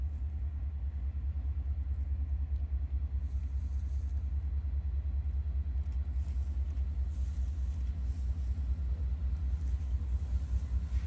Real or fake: real